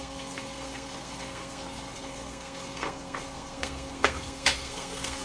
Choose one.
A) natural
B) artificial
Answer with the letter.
B